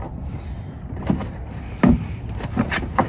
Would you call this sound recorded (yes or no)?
yes